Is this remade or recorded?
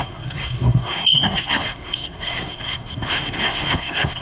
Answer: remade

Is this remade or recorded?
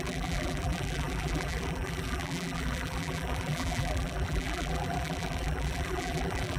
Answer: remade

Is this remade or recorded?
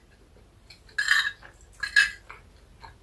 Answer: recorded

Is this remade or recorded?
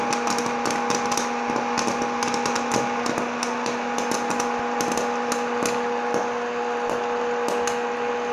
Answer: recorded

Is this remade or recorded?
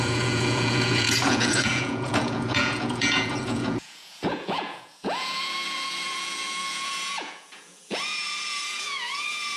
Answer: remade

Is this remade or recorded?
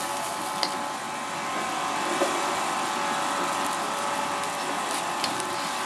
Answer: recorded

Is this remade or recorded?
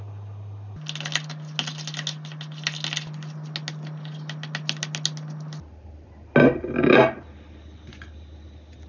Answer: recorded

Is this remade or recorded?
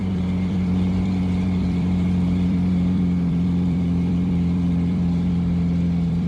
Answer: remade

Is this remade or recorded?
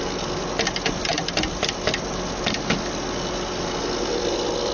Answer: recorded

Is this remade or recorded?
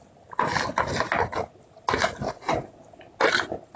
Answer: recorded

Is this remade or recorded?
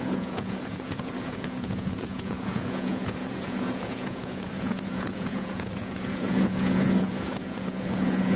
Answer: remade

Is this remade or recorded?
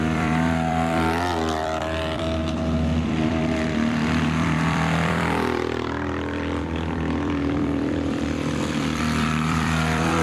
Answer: remade